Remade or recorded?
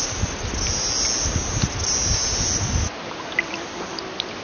recorded